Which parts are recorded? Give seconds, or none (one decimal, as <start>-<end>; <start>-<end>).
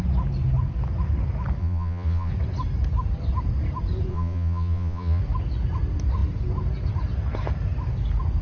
0.0-1.6; 2.3-4.1; 5.2-8.4